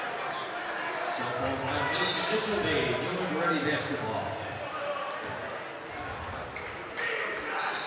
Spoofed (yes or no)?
no